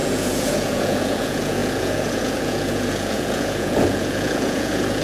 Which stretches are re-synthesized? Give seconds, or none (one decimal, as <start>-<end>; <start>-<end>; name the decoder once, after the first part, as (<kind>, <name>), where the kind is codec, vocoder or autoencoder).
0.0-5.0 (vocoder, Vocos)